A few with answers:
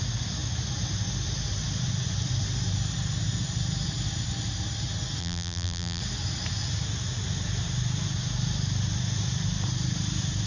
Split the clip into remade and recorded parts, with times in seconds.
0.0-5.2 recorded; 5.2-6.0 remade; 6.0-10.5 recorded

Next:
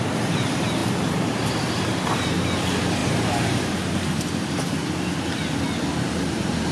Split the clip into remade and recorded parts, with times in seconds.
0.0-4.8 remade; 4.8-5.9 recorded; 5.9-6.7 remade

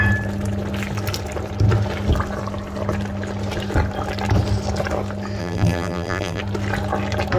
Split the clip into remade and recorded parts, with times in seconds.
0.0-5.4 recorded; 5.4-6.4 remade; 6.4-7.4 recorded

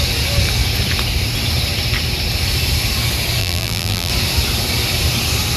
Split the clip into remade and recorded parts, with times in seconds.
0.0-3.4 recorded; 3.4-4.1 remade; 4.1-5.6 recorded

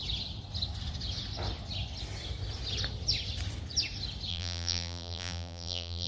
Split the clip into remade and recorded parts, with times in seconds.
0.0-4.3 recorded; 4.3-6.1 remade

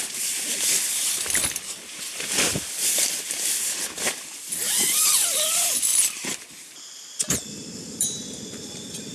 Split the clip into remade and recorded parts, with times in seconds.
0.0-9.1 remade

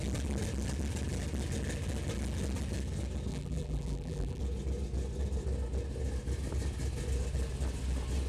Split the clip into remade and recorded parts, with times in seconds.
0.0-3.3 recorded; 3.3-4.4 remade; 4.4-8.3 recorded

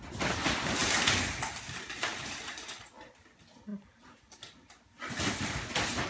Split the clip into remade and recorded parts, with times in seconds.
0.0-0.8 recorded; 0.8-1.6 remade; 1.6-2.1 recorded; 2.1-3.1 remade; 3.1-3.7 recorded; 3.7-4.2 remade; 4.2-6.1 recorded